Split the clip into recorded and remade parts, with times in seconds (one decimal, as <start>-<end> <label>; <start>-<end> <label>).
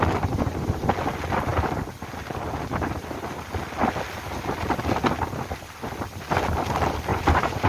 0.0-7.1 recorded; 7.1-7.7 remade